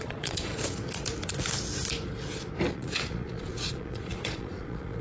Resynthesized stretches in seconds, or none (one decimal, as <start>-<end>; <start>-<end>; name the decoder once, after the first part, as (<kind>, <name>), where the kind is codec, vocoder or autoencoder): 0.0-0.5 (vocoder, Vocos); 2.7-5.0